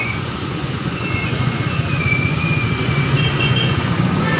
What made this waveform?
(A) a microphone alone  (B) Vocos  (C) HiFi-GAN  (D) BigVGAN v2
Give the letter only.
B